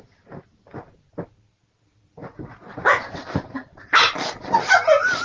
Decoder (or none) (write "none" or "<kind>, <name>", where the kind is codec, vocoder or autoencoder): none